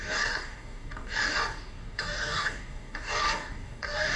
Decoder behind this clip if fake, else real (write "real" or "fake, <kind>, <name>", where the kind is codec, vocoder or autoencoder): fake, codec, DAC